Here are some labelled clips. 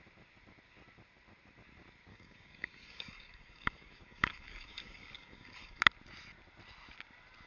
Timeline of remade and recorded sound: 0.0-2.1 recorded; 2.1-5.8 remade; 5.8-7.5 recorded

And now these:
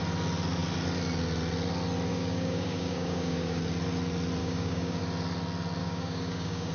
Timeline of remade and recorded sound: 0.0-2.1 recorded; 2.1-3.6 remade; 3.6-4.4 recorded; 4.4-5.0 remade; 5.0-5.8 recorded; 5.8-6.7 remade

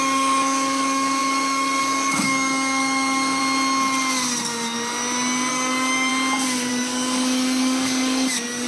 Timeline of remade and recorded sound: 0.0-3.4 remade; 3.4-5.5 recorded; 5.5-6.1 remade; 6.1-6.7 recorded; 6.7-8.7 remade

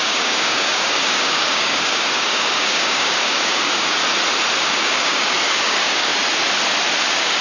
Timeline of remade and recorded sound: 0.0-4.0 remade; 4.0-4.6 recorded; 4.6-6.1 remade; 6.1-7.0 recorded; 7.0-7.4 remade

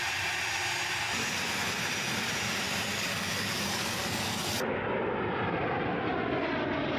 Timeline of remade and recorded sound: 0.0-2.9 recorded; 2.9-4.5 remade; 4.5-7.0 recorded